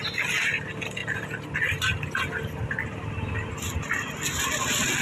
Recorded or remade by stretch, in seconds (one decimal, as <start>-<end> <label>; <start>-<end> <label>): 0.0-5.0 recorded